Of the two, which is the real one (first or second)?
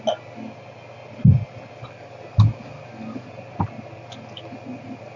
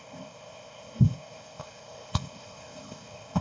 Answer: first